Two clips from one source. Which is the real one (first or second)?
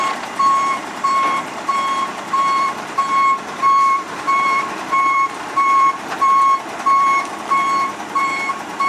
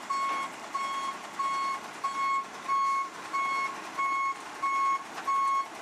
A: second